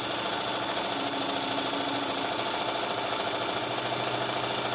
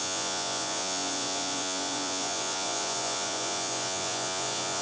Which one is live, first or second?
first